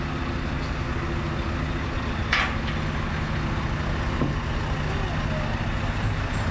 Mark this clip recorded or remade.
recorded